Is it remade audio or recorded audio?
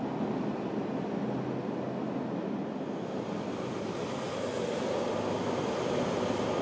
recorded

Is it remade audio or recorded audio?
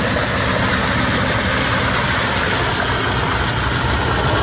recorded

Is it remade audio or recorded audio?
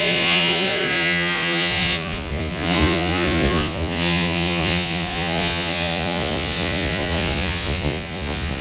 remade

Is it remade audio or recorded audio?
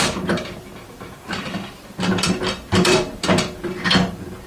remade